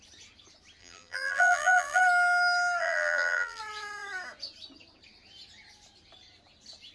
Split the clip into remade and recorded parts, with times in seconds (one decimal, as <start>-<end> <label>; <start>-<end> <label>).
0.0-0.8 recorded; 0.8-2.0 remade; 2.0-2.8 recorded; 2.8-3.6 remade; 3.6-6.9 recorded